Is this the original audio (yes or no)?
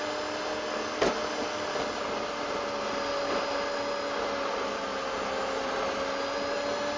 yes